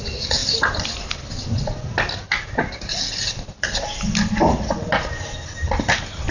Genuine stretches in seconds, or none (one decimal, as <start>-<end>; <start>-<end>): 0.0-6.3